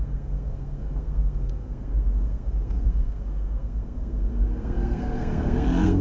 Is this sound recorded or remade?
remade